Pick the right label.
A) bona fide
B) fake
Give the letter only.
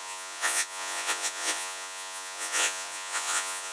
B